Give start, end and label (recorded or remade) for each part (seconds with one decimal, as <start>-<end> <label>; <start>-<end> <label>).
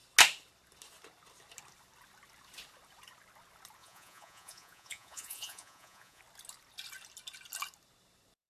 0.0-3.8 recorded; 3.8-6.2 remade; 6.2-8.5 recorded